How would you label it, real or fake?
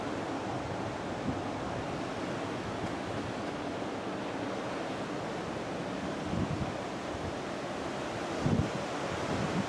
real